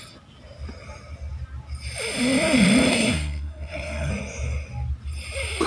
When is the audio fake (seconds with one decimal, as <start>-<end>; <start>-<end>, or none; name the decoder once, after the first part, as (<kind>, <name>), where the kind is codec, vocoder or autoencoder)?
2.9-4.1 (codec, SNAC)